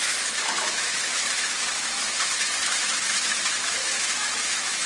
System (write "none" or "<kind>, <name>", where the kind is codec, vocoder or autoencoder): autoencoder, DAC-VAE